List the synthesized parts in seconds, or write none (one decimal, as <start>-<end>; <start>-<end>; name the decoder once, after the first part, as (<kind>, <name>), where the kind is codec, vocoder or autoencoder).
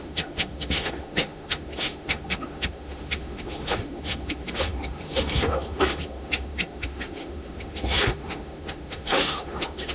0.0-9.9 (autoencoder, DAC-VAE)